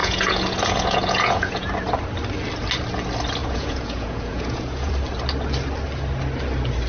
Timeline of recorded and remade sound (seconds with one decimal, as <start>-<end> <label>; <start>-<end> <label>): 0.0-1.7 remade; 1.7-3.4 recorded; 3.4-4.9 remade; 4.9-6.9 recorded